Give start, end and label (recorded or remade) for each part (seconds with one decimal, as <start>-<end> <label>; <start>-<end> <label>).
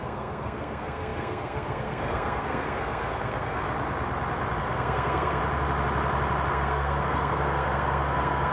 0.0-3.6 remade; 3.6-4.6 recorded; 4.6-5.4 remade; 5.4-6.5 recorded; 6.5-8.5 remade